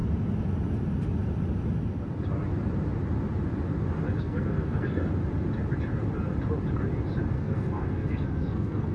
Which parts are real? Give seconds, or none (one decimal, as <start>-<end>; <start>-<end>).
0.0-4.2; 5.1-7.3